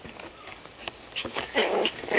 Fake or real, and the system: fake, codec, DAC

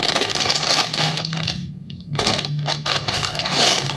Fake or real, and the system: fake, codec, DAC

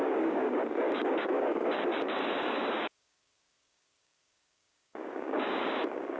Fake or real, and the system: fake, codec, DAC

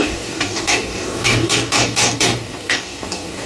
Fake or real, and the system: fake, codec, DAC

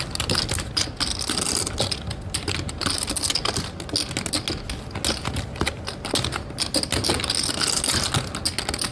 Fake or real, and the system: real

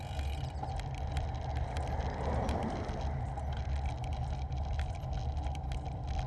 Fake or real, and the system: real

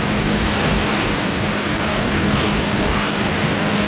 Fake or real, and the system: fake, codec, DAC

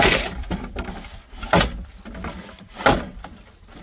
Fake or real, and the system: real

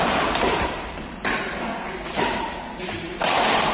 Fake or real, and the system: real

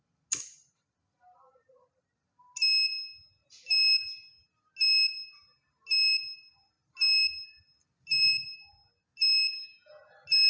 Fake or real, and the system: real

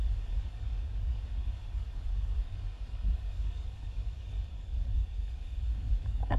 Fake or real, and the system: fake, codec, DAC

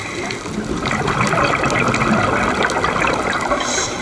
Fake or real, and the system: real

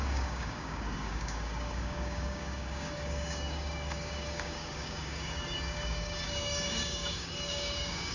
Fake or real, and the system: fake, codec, DAC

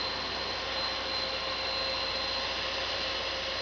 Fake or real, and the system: real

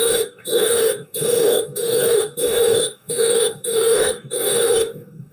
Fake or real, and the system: fake, codec, DAC